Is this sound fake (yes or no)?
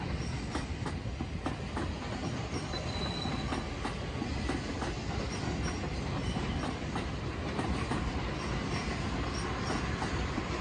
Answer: no